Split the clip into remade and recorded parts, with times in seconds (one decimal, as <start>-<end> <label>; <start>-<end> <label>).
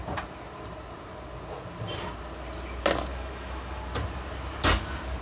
0.0-3.1 recorded; 3.1-3.8 remade; 3.8-5.2 recorded